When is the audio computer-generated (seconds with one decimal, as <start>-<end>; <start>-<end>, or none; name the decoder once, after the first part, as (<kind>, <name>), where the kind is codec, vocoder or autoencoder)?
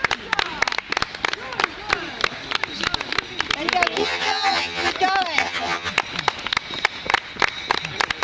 4.0-4.9 (vocoder, HiFi-GAN); 5.4-5.9